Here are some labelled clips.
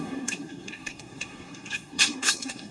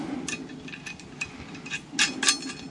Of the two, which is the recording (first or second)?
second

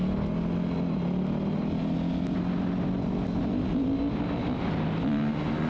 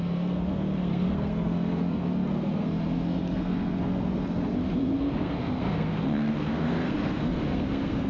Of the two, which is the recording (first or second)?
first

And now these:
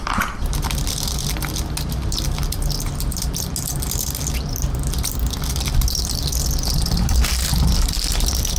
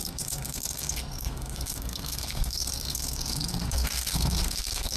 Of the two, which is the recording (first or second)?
first